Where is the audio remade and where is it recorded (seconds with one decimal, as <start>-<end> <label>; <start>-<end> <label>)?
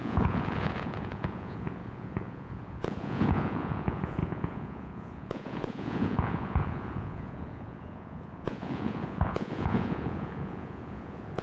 0.0-11.4 remade